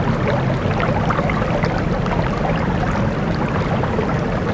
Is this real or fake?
real